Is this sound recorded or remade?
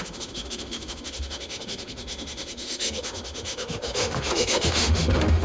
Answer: remade